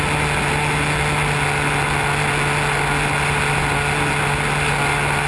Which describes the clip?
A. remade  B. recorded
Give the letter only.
B